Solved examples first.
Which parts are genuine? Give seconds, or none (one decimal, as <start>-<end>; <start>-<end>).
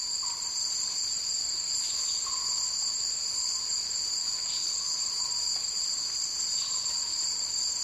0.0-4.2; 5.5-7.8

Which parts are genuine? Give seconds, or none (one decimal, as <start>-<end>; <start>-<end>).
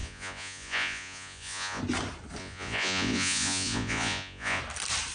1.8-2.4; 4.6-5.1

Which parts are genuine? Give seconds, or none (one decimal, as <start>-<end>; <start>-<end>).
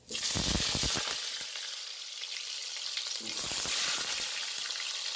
0.0-5.2